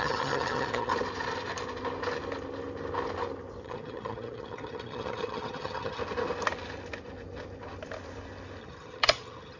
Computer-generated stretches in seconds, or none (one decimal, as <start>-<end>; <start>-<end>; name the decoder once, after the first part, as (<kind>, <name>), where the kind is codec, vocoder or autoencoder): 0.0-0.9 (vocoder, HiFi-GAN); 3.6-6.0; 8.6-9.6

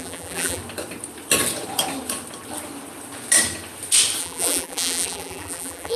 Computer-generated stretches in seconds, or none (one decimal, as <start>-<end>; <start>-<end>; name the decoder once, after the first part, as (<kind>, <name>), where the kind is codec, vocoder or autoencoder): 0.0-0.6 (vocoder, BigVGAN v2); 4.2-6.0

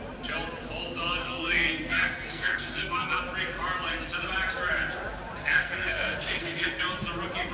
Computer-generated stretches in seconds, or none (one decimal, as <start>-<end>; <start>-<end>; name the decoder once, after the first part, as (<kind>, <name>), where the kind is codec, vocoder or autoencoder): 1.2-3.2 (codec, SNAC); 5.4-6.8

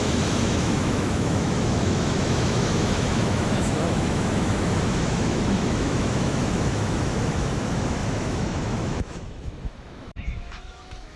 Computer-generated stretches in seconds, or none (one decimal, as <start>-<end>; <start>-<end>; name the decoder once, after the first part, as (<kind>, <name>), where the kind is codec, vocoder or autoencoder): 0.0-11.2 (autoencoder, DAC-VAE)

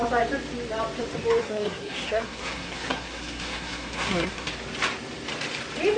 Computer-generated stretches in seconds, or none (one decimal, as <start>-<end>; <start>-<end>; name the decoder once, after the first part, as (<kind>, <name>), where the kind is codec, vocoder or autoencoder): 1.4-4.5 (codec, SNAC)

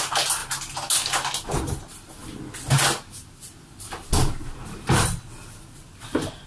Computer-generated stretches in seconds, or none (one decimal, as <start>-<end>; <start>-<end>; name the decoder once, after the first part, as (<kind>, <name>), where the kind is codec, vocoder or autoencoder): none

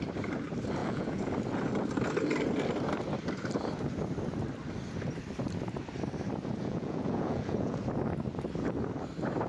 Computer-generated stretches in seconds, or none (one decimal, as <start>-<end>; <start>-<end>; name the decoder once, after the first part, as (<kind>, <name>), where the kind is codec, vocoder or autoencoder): 0.8-1.3 (vocoder, Vocos); 6.6-7.8

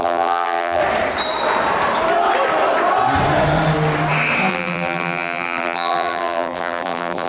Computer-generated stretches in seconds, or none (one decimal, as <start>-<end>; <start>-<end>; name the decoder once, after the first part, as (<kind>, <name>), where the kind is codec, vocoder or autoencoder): 0.0-0.8 (vocoder, BigVGAN v2); 4.5-7.3